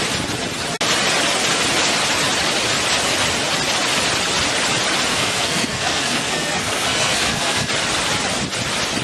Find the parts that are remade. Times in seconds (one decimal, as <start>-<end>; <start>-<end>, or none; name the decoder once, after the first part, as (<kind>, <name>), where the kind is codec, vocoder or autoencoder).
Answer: 5.1-7.7 (codec, SNAC)

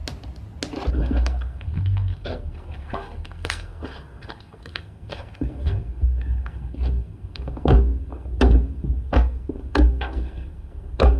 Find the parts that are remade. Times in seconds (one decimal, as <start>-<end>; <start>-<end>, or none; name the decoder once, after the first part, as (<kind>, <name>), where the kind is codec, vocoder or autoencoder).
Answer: 0.9-11.2 (codec, SNAC)

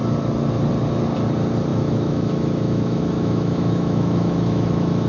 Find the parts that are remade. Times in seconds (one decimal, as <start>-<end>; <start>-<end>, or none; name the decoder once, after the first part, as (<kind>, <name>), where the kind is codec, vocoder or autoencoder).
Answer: 1.7-5.1 (autoencoder, DAC-VAE)

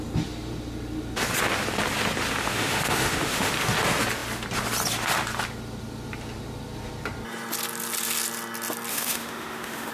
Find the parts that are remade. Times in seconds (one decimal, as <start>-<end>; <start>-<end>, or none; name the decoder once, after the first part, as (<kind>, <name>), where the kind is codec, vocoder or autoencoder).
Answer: 2.4-3.5 (autoencoder, DAC-VAE); 8.9-9.9

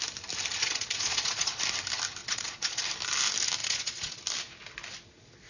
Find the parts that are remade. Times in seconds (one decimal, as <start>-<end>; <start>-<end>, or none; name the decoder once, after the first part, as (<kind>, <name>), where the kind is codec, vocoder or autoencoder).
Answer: 0.6-1.6 (vocoder, Vocos); 2.2-2.8; 3.6-4.2

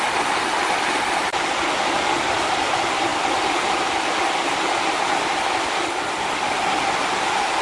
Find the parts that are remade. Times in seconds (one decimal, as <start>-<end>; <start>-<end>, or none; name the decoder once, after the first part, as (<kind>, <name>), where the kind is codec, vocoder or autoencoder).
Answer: none

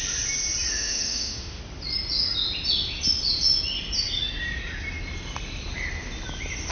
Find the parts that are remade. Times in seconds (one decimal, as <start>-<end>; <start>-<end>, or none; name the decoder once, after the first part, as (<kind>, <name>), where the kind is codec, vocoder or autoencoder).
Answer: 0.7-1.6 (autoencoder, DAC-VAE)